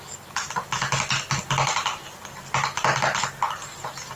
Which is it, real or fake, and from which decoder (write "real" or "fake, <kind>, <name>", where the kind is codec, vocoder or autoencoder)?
real